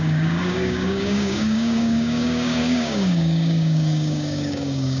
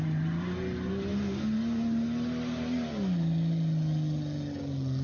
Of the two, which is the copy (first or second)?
first